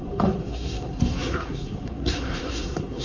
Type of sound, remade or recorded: remade